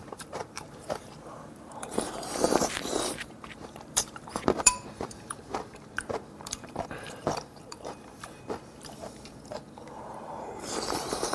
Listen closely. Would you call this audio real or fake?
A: fake